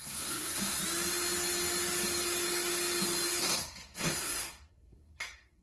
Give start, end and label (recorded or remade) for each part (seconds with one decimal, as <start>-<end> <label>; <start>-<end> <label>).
0.0-0.8 remade; 0.8-3.4 recorded; 3.4-5.6 remade